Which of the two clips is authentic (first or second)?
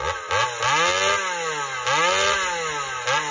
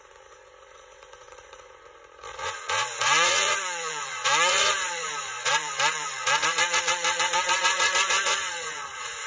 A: first